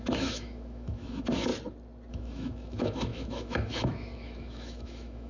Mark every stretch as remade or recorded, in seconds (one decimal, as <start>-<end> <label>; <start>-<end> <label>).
0.0-1.5 remade; 1.5-2.1 recorded; 2.1-5.3 remade